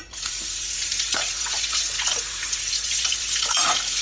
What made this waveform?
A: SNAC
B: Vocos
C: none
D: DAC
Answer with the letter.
B